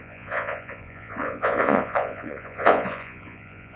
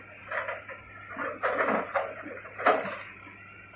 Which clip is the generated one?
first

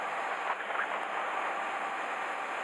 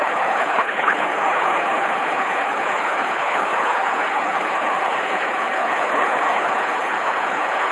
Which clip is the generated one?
second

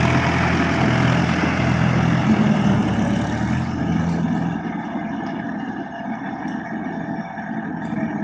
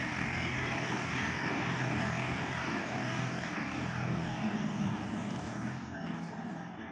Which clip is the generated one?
second